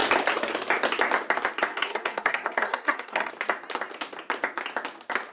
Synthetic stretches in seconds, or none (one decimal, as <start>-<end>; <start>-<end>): 1.7-3.3